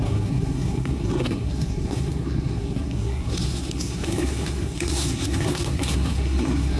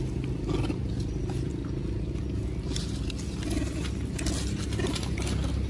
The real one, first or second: second